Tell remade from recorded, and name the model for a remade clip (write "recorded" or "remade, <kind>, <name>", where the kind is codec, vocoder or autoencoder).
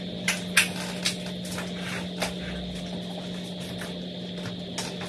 recorded